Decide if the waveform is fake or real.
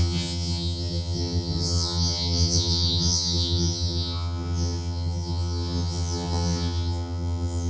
fake